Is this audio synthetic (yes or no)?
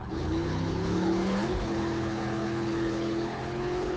yes